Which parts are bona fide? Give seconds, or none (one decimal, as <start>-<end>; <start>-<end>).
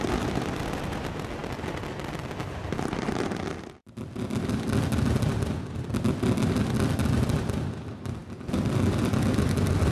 0.0-9.9